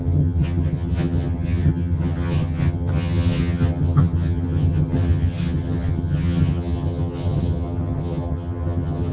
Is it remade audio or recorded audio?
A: remade